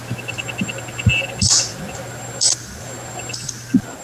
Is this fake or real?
real